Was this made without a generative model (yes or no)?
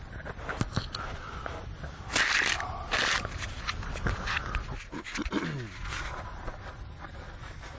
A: yes